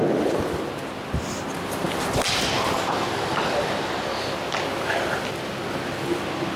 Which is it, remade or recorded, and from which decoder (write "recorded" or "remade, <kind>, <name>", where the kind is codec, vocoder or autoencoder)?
recorded